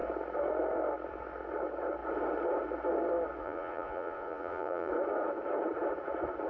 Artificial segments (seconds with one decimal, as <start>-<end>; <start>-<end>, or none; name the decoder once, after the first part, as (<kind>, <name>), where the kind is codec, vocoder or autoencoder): 3.4-4.9 (vocoder, Vocos)